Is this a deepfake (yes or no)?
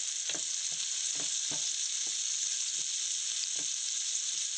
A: no